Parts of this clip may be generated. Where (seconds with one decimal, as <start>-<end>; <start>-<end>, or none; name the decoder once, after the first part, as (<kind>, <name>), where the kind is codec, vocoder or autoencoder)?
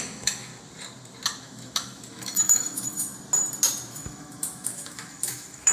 0.0-0.5 (autoencoder, DAC-VAE); 1.4-3.1; 3.9-5.7